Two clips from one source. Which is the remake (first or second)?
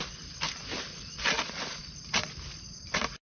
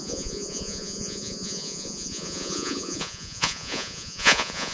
second